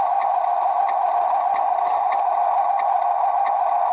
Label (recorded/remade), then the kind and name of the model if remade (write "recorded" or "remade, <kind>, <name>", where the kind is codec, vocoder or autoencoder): recorded